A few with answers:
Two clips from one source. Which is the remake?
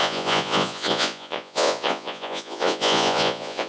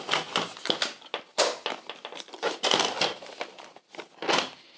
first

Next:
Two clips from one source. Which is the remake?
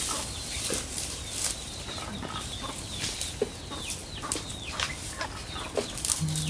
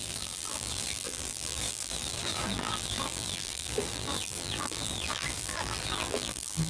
second